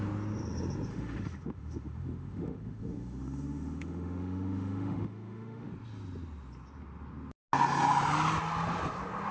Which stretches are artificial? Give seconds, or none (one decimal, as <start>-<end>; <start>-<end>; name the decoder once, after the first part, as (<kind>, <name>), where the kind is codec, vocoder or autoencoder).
0.9-5.7 (autoencoder, DAC-VAE)